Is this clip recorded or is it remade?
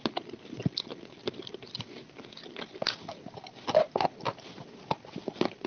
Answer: recorded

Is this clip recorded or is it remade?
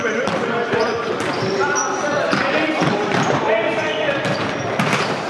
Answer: remade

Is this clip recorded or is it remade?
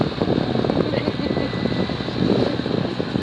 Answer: recorded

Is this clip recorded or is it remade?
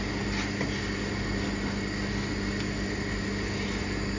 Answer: recorded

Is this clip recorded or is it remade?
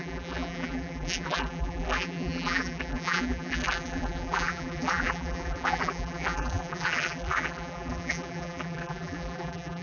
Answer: remade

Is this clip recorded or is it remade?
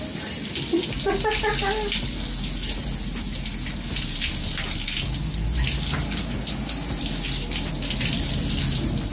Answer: recorded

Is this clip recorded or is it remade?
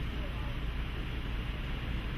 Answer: remade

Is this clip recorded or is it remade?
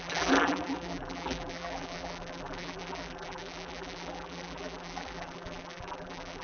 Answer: remade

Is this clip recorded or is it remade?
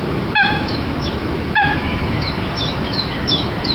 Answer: remade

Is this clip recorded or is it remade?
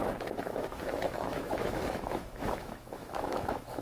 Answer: remade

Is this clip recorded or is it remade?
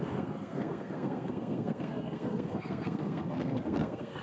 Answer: remade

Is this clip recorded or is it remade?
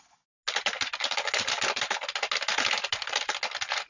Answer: recorded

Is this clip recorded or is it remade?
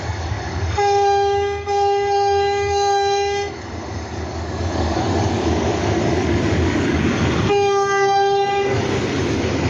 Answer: remade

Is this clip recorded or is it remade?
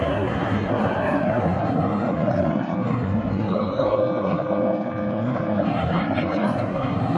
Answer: remade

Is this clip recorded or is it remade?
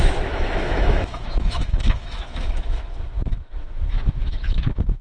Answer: remade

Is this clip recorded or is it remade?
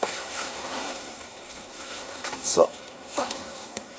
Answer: remade